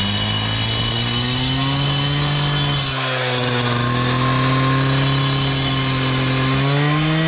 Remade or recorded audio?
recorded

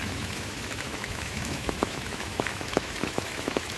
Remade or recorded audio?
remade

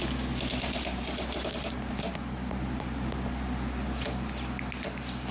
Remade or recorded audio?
recorded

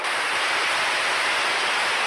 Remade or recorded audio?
recorded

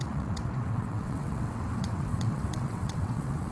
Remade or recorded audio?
remade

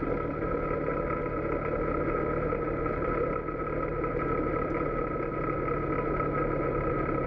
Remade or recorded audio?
recorded